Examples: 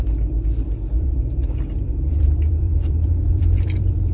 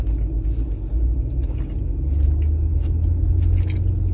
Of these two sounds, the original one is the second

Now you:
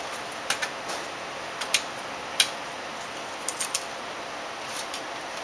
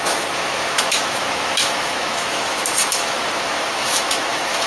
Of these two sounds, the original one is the first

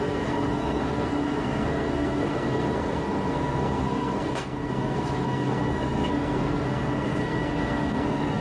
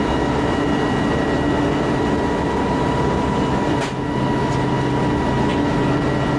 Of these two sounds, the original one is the second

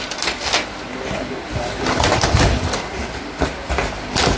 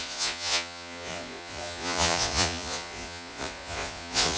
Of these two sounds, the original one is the first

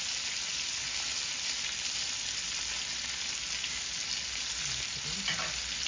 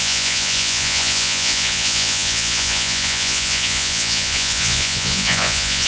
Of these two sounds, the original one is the first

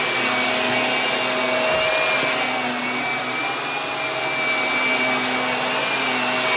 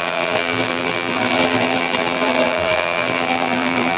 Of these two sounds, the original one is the first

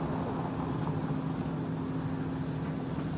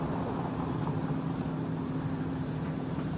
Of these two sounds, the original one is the first